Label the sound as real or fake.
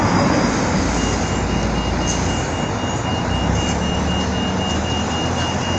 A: real